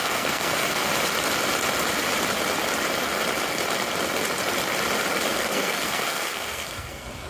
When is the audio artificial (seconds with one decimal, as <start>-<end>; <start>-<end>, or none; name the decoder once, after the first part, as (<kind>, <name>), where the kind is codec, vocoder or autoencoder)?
0.0-0.9 (codec, SNAC); 5.3-7.3